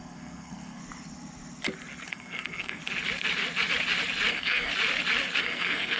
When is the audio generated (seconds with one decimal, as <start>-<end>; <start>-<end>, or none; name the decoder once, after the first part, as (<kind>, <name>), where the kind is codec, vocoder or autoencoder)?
0.0-0.8 (codec, SNAC); 2.1-2.8; 4.3-4.7; 5.4-6.0